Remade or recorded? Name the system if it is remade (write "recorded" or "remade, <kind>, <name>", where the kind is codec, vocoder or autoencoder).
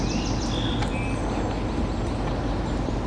recorded